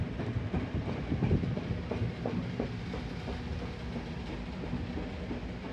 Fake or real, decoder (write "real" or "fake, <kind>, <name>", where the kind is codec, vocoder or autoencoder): real